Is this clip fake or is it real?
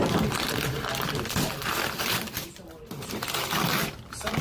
real